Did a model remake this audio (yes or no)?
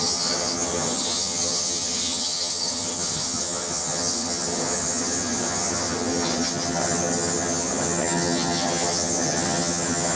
yes